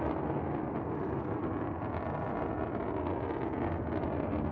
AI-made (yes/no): no